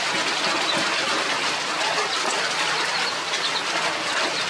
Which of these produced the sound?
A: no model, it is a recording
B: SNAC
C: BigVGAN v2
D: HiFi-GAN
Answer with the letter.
A